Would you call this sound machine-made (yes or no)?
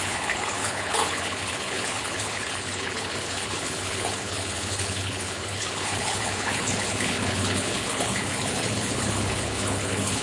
yes